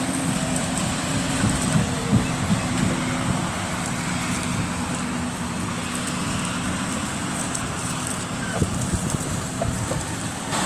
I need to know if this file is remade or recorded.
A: recorded